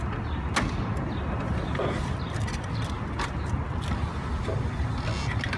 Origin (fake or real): real